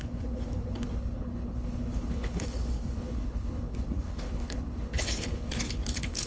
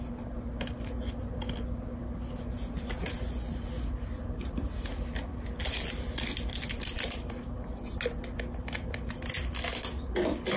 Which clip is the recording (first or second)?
second